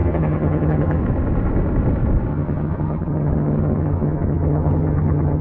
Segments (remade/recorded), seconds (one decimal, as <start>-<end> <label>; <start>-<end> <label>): 0.0-1.0 remade; 1.0-2.3 recorded; 2.3-5.4 remade